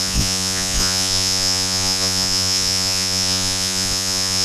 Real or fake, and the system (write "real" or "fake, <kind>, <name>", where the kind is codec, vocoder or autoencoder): fake, vocoder, Vocos